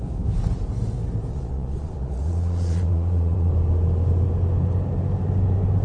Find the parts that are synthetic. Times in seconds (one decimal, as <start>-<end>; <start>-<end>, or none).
1.3-3.5